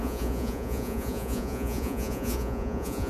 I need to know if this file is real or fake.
fake